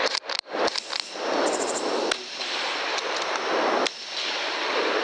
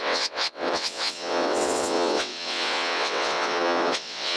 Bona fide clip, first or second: first